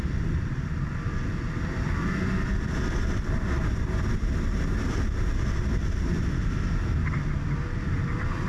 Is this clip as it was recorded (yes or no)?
no